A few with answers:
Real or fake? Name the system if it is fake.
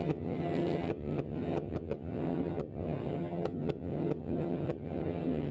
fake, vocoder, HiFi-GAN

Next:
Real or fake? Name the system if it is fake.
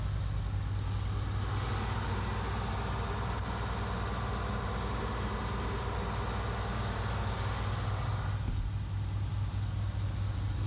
real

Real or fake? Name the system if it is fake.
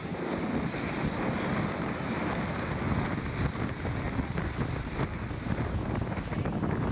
real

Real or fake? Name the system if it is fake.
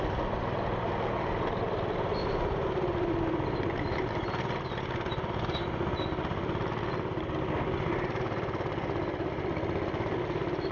real